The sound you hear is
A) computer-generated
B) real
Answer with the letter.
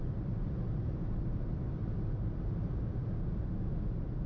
B